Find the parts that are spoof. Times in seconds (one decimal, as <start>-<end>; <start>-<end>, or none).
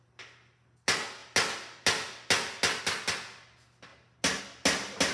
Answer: none